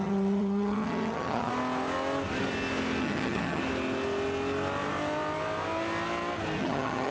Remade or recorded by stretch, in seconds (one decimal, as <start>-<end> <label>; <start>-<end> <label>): 0.0-1.5 remade; 1.5-3.0 recorded; 3.0-3.6 remade; 3.6-6.6 recorded; 6.6-7.1 remade